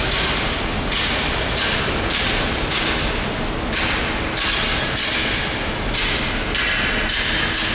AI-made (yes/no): no